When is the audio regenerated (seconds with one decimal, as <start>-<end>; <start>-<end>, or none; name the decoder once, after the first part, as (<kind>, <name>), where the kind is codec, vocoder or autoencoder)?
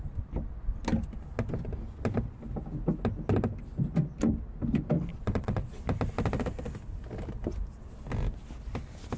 5.1-5.8 (vocoder, Vocos)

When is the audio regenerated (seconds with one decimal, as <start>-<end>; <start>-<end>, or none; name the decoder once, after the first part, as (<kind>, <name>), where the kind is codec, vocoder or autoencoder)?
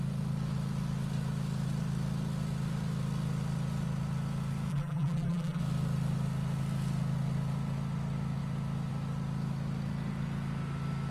4.7-5.6 (vocoder, BigVGAN v2)